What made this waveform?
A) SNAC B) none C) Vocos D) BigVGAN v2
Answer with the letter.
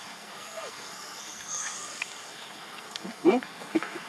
A